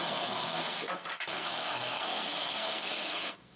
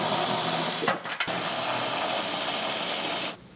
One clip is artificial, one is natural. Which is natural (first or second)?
second